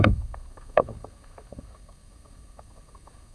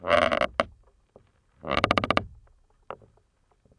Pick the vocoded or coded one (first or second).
first